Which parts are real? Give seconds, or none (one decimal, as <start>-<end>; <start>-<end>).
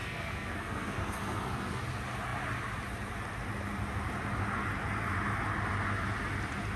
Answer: 1.8-6.8